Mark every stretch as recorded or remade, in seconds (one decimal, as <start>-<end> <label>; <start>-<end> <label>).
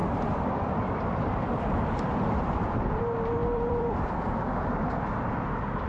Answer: 0.0-3.0 remade; 3.0-3.4 recorded; 3.4-4.6 remade; 4.6-5.9 recorded